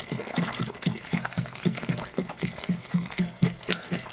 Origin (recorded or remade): remade